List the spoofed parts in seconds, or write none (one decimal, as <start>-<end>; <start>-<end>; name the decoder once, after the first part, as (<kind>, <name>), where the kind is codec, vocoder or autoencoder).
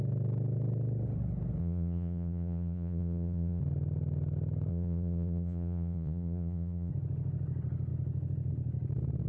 1.6-3.6 (vocoder, Vocos); 4.7-6.9